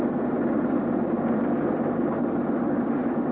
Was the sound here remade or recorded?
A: recorded